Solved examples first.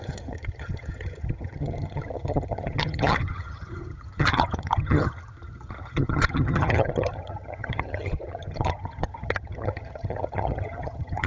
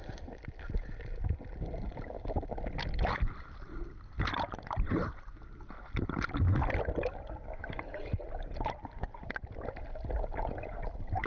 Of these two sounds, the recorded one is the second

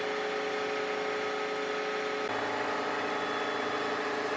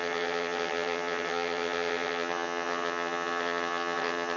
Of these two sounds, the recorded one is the first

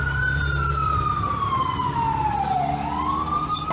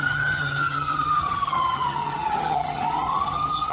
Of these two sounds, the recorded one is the first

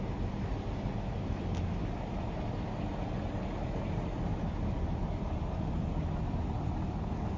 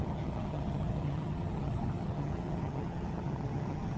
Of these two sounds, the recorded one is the first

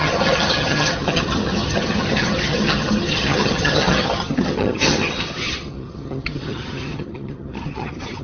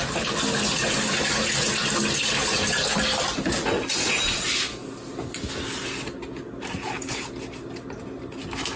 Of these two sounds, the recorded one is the second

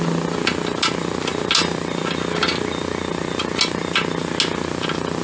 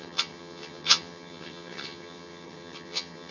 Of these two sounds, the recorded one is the first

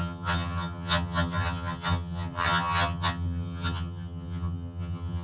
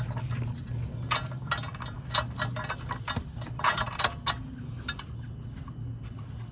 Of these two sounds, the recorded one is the second